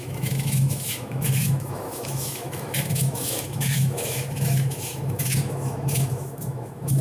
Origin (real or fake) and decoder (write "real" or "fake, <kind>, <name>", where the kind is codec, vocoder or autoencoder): fake, autoencoder, DAC-VAE